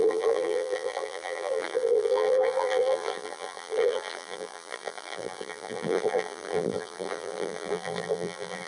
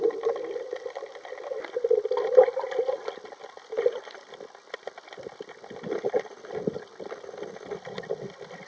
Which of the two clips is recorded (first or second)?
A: second